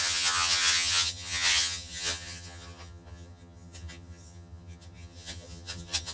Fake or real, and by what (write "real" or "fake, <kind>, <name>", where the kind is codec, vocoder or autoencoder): fake, vocoder, HiFi-GAN